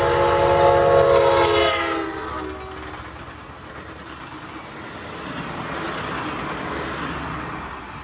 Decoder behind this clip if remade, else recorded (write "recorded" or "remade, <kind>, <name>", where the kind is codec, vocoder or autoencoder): recorded